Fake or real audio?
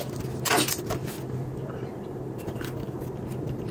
real